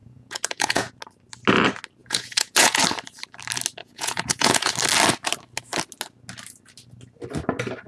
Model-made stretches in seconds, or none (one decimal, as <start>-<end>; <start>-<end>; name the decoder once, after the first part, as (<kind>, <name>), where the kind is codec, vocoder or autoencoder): 0.0-0.9 (vocoder, Vocos); 2.0-2.8; 3.8-4.7